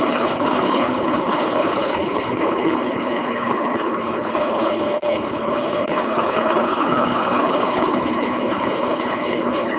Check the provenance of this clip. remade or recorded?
remade